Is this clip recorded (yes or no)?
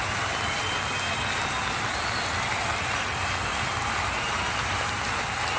yes